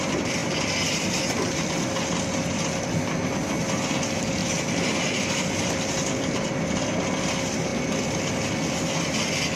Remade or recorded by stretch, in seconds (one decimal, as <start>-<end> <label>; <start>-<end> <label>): 0.0-4.4 recorded; 4.4-5.7 remade; 5.7-9.6 recorded